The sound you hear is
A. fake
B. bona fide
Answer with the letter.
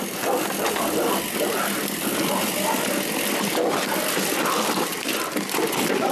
B